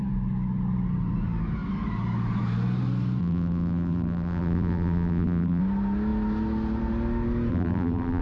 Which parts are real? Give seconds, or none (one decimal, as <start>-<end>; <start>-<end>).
0.0-3.2; 5.6-7.5